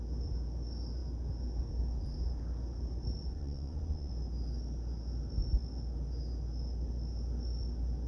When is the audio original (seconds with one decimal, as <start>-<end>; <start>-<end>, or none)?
0.0-3.2; 4.1-8.1